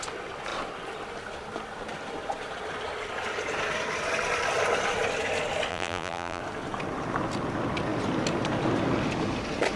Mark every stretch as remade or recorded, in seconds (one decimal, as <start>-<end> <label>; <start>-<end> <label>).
0.0-5.7 recorded; 5.7-6.4 remade; 6.4-9.8 recorded